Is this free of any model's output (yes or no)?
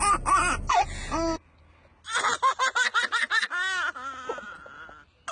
yes